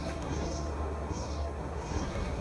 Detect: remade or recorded remade